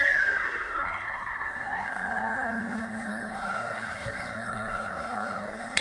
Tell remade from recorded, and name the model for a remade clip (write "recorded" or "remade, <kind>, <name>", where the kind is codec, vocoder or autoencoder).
remade, codec, SNAC